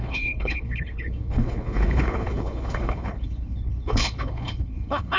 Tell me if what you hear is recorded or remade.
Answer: remade